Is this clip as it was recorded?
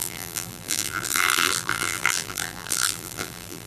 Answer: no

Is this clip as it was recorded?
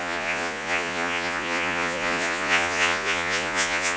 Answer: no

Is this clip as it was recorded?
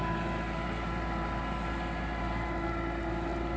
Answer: yes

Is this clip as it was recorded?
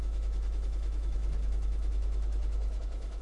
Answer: no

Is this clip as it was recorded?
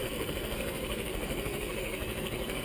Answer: no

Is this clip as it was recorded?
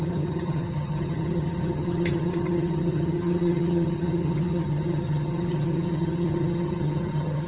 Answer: no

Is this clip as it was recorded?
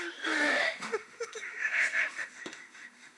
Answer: no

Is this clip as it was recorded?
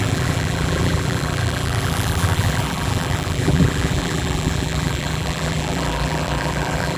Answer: no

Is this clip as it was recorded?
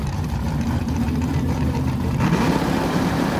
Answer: no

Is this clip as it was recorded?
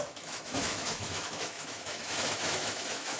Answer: no